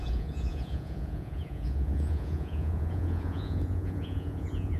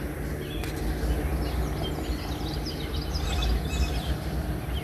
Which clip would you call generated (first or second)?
first